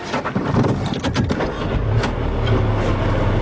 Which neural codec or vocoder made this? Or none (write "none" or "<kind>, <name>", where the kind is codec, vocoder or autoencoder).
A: none